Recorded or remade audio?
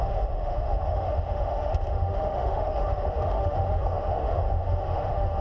remade